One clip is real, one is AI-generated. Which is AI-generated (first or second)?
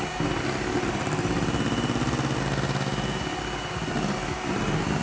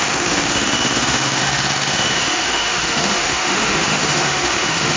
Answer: second